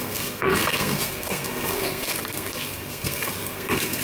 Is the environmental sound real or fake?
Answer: fake